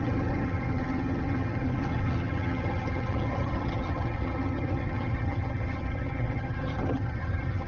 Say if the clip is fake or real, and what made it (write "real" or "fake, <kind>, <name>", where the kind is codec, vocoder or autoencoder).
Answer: fake, vocoder, HiFi-GAN